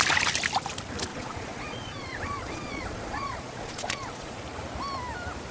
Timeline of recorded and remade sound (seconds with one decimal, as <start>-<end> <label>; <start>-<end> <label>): 0.0-1.1 recorded; 1.1-4.4 remade; 4.4-5.5 recorded